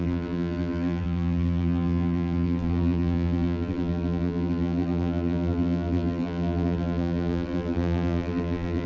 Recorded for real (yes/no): no